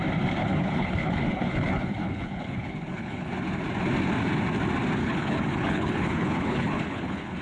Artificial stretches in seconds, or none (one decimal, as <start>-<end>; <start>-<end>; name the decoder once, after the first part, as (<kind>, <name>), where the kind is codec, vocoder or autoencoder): 0.4-3.3 (codec, HILCodec); 5.0-7.4